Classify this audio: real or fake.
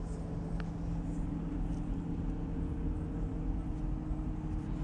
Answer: real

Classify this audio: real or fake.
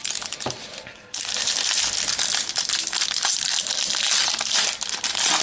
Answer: real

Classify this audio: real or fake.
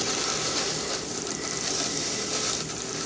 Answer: real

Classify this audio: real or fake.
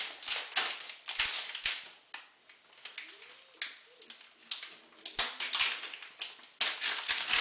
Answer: real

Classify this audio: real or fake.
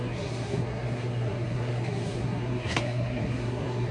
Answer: fake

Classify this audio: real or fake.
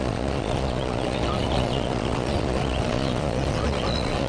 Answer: fake